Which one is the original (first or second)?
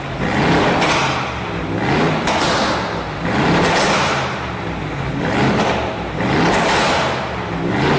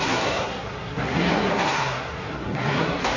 first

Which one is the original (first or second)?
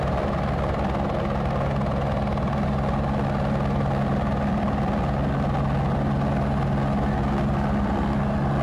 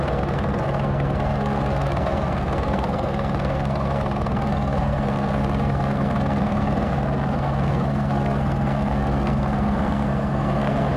first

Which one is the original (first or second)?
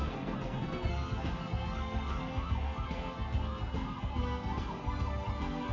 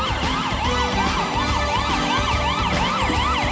second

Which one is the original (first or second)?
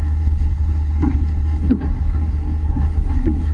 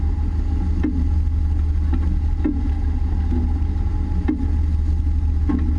second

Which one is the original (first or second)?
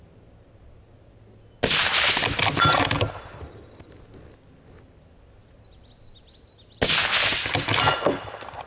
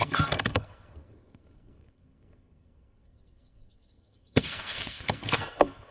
first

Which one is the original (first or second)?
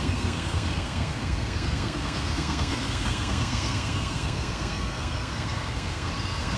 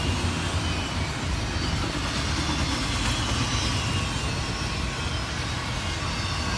second